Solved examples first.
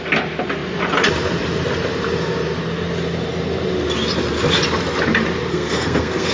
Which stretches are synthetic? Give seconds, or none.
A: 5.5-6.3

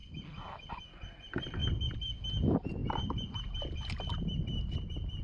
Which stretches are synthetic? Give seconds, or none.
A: 1.1-1.6; 2.1-2.8

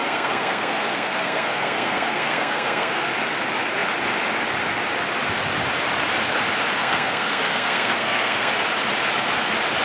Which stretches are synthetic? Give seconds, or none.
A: 0.0-3.1; 6.8-8.5